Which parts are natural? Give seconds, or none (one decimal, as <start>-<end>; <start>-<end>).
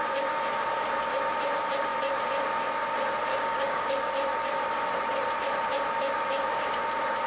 0.0-3.3; 4.1-7.3